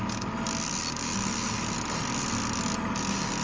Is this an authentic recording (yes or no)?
yes